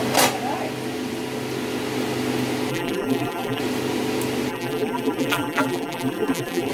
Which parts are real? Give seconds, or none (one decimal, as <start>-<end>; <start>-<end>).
0.0-2.7; 3.6-4.5